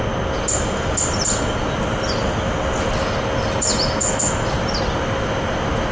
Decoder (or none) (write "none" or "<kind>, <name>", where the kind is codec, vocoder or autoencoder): none